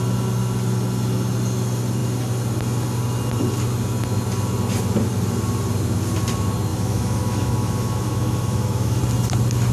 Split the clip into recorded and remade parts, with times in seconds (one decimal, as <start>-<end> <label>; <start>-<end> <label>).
0.0-6.7 recorded; 6.7-9.0 remade; 9.0-9.7 recorded